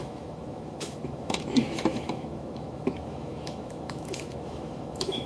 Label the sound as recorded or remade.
remade